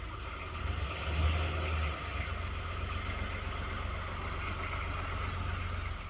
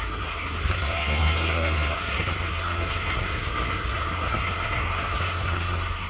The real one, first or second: first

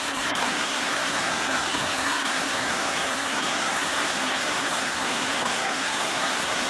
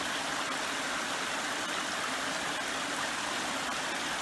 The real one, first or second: second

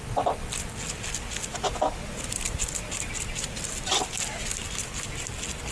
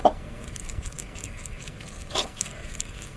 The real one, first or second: first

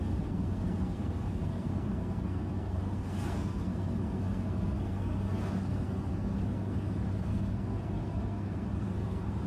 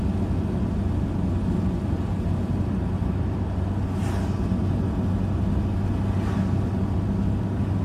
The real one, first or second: second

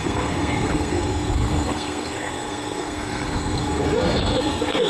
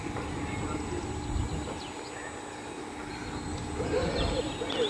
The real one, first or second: second